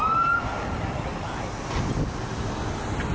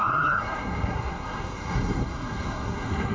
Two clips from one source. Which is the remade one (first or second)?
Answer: second